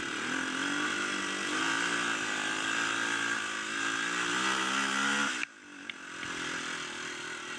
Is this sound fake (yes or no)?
no